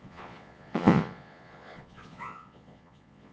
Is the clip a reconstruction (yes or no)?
yes